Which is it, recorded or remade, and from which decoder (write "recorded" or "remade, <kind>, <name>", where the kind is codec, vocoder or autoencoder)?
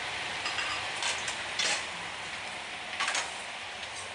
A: remade, vocoder, BigVGAN v2